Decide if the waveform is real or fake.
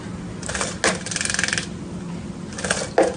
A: real